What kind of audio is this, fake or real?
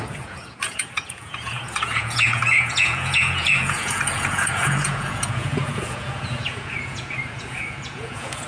fake